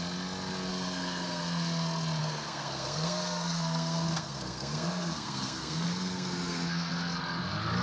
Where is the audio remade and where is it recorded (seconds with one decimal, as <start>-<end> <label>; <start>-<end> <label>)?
0.0-0.7 recorded; 0.7-1.4 remade; 1.4-2.2 recorded; 2.2-6.9 remade; 6.9-7.8 recorded